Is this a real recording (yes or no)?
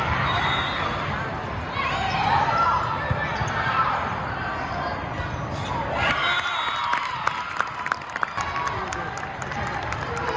yes